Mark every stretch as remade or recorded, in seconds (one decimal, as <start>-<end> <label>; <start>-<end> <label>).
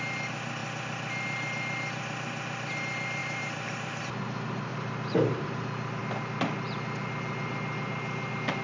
0.0-3.2 recorded; 3.2-4.0 remade; 4.0-4.7 recorded; 4.7-6.0 remade; 6.0-8.6 recorded